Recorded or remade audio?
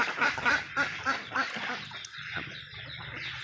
remade